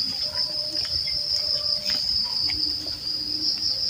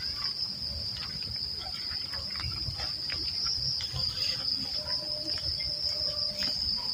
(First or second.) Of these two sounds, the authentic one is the second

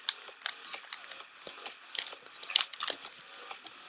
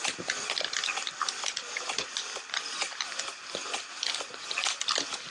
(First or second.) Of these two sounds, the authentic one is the first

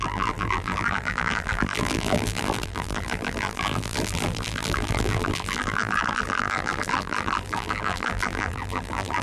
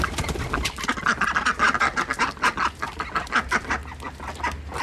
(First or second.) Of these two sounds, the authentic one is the second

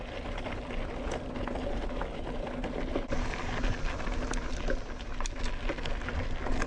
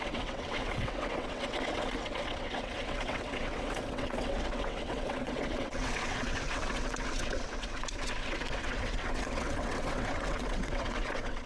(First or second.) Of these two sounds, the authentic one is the first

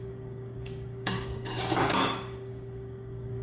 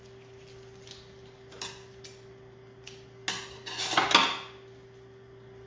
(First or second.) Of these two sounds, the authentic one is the second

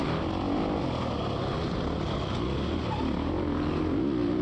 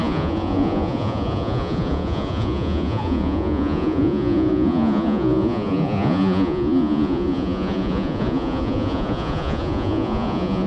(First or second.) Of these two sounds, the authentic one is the first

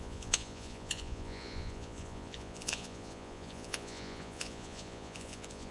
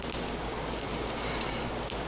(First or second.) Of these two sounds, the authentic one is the second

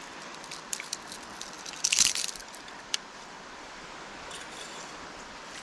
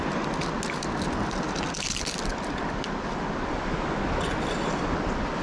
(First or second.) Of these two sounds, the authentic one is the second